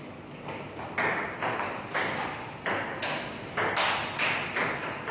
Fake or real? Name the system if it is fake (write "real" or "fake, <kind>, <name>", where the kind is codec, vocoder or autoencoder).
real